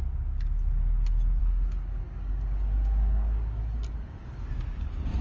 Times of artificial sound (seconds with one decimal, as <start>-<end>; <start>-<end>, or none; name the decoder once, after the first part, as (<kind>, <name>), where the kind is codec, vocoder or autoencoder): 1.4-4.5 (codec, DAC)